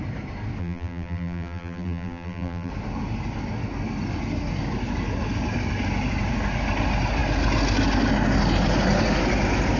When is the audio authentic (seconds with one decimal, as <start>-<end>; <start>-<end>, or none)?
0.0-0.6; 2.7-9.8